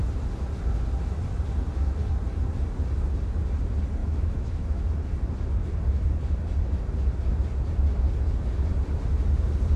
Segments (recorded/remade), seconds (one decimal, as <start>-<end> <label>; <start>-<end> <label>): 0.0-4.0 recorded; 4.0-4.8 remade; 4.8-9.8 recorded